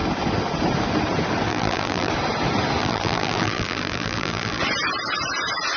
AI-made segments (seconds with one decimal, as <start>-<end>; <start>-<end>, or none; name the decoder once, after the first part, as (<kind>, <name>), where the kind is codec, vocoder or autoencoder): 1.5-2.1 (vocoder, BigVGAN v2); 2.8-4.6